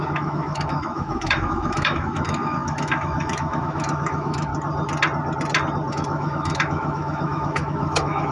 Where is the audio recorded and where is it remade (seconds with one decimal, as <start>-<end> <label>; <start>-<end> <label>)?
0.0-4.5 remade; 4.5-5.9 recorded; 5.9-8.3 remade